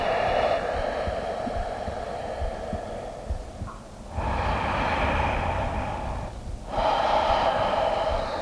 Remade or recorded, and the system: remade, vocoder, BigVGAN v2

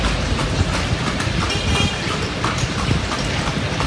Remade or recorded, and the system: recorded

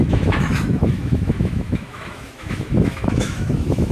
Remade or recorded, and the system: remade, autoencoder, DAC-VAE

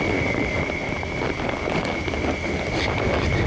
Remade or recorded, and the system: recorded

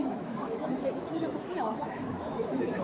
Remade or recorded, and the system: remade, autoencoder, DAC-VAE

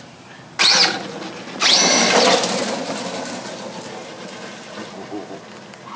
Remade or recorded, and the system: recorded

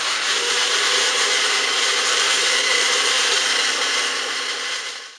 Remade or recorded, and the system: remade, vocoder, BigVGAN v2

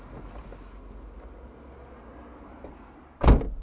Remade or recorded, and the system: recorded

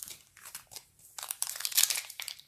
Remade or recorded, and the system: remade, vocoder, BigVGAN v2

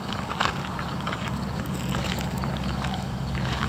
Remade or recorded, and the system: remade, codec, DAC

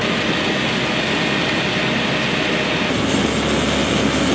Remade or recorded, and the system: recorded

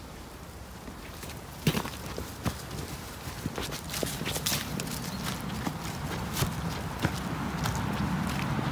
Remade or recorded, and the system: recorded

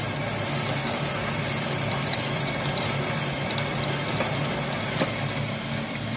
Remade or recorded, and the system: recorded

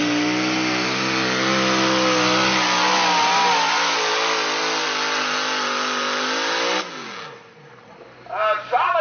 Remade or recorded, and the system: recorded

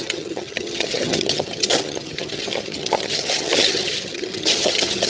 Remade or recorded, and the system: remade, vocoder, HiFi-GAN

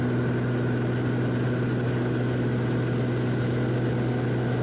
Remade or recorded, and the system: recorded